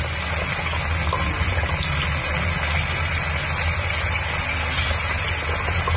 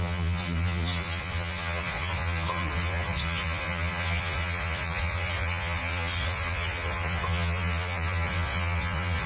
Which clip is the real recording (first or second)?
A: first